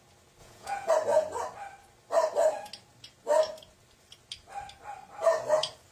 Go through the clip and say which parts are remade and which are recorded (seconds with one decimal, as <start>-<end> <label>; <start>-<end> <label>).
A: 0.0-0.4 recorded; 0.4-0.9 remade; 0.9-5.9 recorded